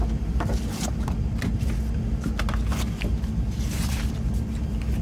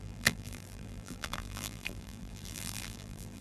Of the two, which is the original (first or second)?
first